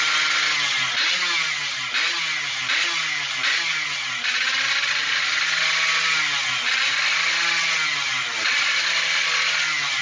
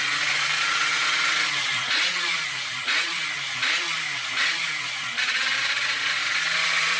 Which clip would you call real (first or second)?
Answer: first